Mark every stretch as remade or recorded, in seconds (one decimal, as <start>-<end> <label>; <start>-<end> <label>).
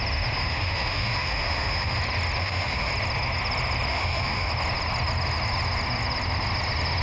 0.0-0.4 recorded; 0.4-2.0 remade; 2.0-2.4 recorded; 2.4-2.9 remade; 2.9-3.9 recorded; 3.9-4.5 remade; 4.5-7.0 recorded